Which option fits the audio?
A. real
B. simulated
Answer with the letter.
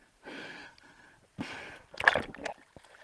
A